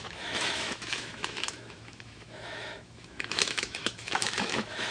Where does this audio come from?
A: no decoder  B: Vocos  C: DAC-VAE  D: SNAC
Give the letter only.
C